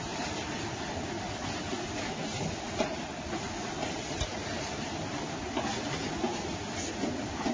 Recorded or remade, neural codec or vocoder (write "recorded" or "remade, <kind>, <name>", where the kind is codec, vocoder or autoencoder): recorded